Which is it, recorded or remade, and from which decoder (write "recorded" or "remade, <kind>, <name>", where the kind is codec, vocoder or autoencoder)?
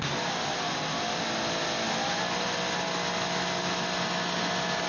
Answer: recorded